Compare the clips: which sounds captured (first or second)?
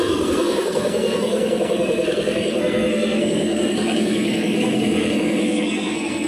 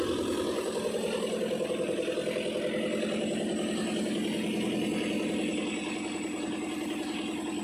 second